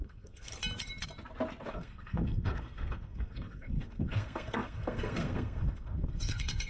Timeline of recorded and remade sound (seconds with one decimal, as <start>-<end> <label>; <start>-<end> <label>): 0.0-0.5 remade; 0.5-1.7 recorded; 1.7-6.7 remade

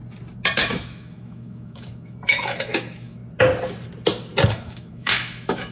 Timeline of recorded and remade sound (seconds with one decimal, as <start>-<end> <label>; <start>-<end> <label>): 0.0-0.6 recorded; 0.6-3.2 remade; 3.2-4.5 recorded; 4.5-5.7 remade

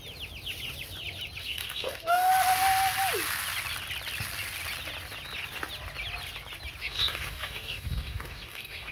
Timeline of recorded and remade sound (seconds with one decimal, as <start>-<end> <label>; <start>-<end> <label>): 0.0-1.4 recorded; 1.4-2.3 remade; 2.3-6.8 recorded; 6.8-8.9 remade